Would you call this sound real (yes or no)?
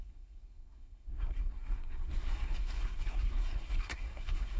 no